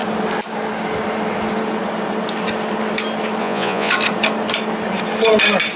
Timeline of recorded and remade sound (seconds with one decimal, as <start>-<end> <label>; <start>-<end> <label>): 0.0-3.4 recorded; 3.4-3.9 remade; 3.9-5.8 recorded